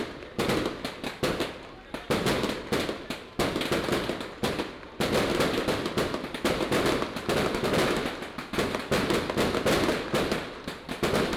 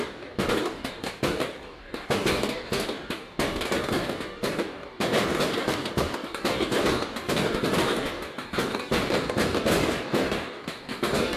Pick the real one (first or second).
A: first